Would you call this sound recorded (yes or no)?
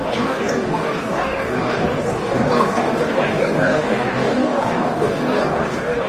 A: no